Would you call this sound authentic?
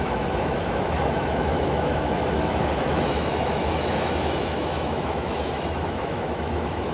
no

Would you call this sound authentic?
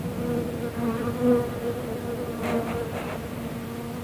yes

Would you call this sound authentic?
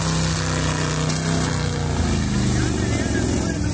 yes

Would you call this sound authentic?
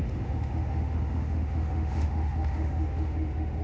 no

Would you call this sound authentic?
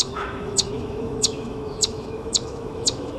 no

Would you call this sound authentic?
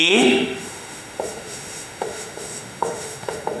no